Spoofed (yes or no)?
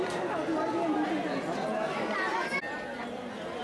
no